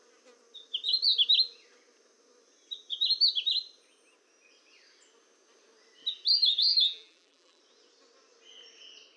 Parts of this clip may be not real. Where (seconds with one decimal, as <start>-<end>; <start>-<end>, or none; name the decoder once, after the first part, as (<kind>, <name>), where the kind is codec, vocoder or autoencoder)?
6.6-7.6 (vocoder, BigVGAN v2)